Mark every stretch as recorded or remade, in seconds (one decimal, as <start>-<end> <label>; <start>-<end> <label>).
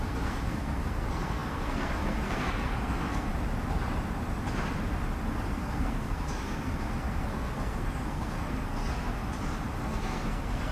0.0-3.3 remade; 3.3-5.3 recorded; 5.3-9.2 remade; 9.2-9.8 recorded; 9.8-10.7 remade